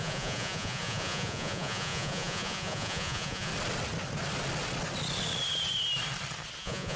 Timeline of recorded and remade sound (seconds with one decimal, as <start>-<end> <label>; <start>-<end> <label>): 0.0-3.5 remade; 3.5-6.6 recorded; 6.6-7.0 remade